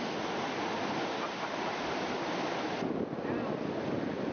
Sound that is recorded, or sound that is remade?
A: recorded